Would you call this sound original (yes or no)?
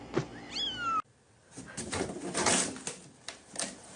yes